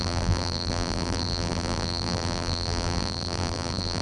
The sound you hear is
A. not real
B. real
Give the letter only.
A